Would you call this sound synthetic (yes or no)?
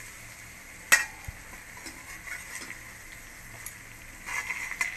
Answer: no